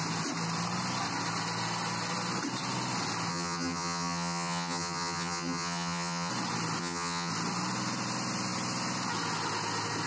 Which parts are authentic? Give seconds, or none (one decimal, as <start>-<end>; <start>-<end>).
0.0-3.3; 6.3-6.8; 7.3-10.1